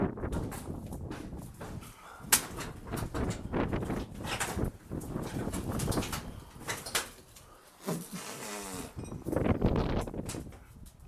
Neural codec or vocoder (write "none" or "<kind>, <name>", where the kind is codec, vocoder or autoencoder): none